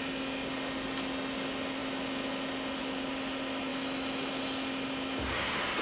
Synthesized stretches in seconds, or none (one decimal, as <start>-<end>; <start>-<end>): 3.7-4.3